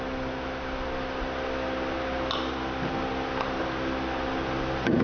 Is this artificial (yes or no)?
no